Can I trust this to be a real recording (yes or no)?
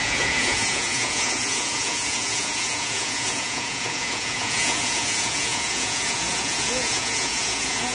no